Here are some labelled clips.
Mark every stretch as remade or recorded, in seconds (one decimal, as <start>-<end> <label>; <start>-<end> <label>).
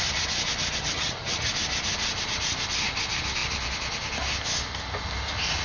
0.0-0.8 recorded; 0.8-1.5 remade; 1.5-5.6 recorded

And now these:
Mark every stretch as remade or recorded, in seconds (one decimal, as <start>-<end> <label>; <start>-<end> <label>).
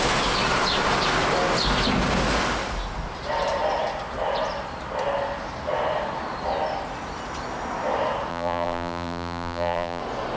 0.0-8.3 recorded; 8.3-10.0 remade; 10.0-10.4 recorded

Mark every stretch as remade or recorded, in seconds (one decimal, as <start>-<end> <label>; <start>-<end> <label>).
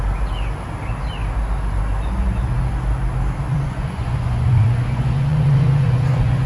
0.0-3.5 recorded; 3.5-6.5 remade